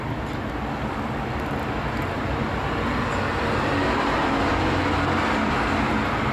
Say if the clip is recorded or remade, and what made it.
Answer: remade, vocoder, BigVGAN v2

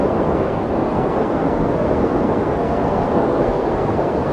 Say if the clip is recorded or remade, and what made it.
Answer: remade, codec, SNAC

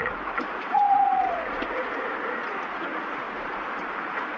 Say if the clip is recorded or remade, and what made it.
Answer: remade, vocoder, Vocos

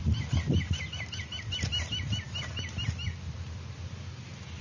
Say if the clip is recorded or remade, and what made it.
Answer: recorded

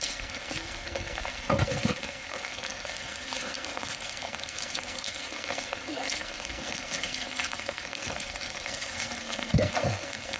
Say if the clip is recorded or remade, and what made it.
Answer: remade, codec, SNAC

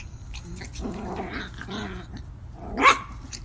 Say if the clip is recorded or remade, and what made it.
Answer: recorded